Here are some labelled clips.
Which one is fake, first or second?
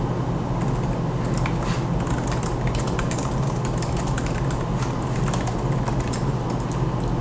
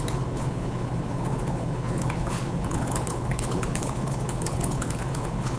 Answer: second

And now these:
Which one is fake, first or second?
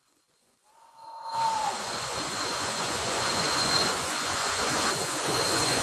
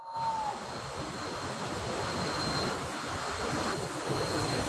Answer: first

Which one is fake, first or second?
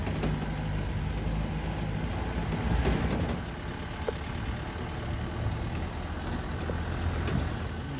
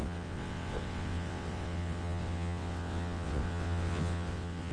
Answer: second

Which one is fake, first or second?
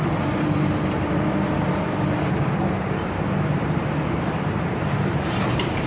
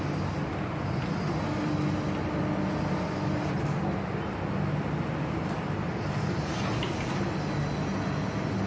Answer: first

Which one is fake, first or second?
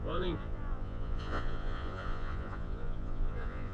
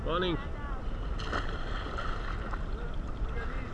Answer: first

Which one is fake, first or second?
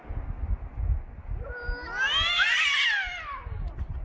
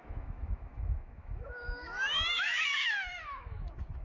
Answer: second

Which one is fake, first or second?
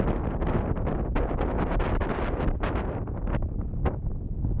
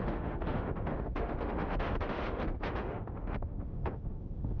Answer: second